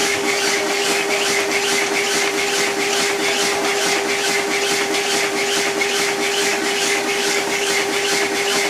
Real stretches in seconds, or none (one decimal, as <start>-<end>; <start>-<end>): 1.1-6.4; 7.7-8.7